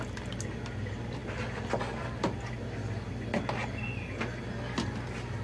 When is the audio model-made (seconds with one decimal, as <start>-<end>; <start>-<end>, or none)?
none